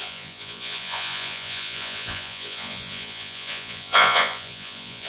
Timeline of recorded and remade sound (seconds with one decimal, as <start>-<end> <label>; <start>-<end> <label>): 0.0-5.1 remade